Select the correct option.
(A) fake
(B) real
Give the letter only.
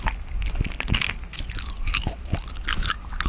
B